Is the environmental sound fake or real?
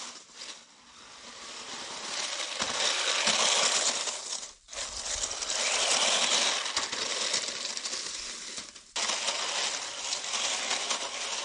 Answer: real